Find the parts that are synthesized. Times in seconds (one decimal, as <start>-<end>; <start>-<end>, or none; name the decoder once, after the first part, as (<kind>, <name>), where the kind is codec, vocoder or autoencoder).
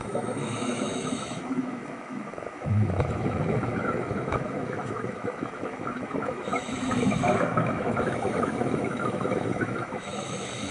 0.0-10.7 (autoencoder, DAC-VAE)